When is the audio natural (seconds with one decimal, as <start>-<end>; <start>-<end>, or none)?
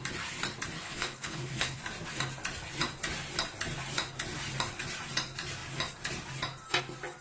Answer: 0.0-0.8; 1.8-7.2